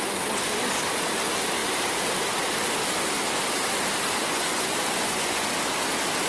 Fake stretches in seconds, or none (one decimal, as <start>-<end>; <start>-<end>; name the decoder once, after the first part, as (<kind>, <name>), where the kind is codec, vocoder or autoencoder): 4.2-5.5 (vocoder, Vocos)